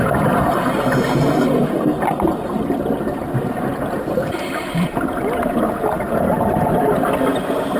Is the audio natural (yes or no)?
yes